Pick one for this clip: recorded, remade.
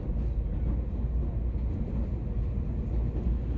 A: recorded